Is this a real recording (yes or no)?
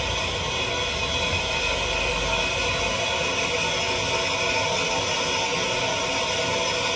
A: yes